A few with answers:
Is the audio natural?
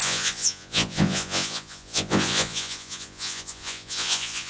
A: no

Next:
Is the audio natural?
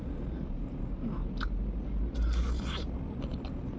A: yes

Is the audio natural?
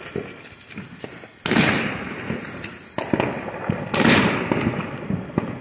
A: yes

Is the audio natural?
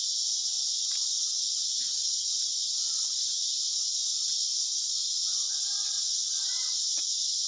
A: yes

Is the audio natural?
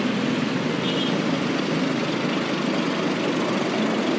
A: yes